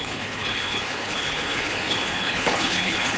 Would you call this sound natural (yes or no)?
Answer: no